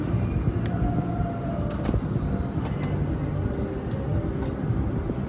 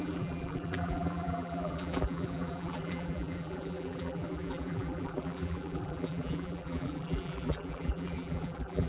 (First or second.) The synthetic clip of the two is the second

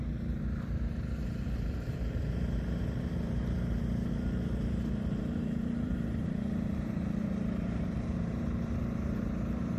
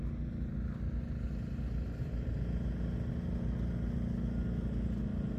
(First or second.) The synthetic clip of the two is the first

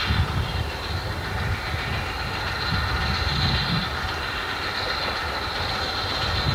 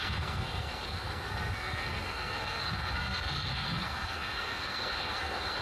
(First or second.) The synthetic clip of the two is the second